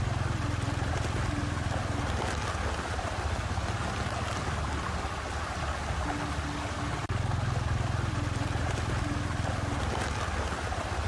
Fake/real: real